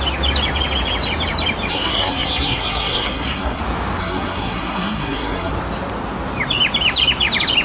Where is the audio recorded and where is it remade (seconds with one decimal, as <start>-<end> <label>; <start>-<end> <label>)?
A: 0.0-1.7 recorded; 1.7-3.6 remade; 3.6-4.0 recorded; 4.0-5.5 remade; 5.5-7.6 recorded